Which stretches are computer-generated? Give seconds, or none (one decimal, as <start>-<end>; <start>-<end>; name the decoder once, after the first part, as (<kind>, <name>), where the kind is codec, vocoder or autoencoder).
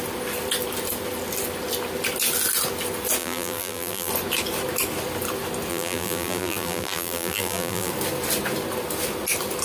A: 3.2-4.1 (vocoder, BigVGAN v2); 5.7-7.9